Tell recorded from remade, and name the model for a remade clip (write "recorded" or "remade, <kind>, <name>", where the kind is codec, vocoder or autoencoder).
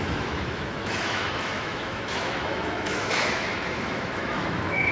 remade, autoencoder, DAC-VAE